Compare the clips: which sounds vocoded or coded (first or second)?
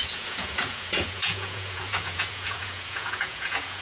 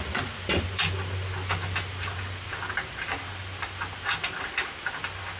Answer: first